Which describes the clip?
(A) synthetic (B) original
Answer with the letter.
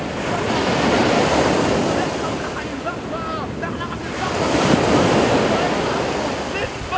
B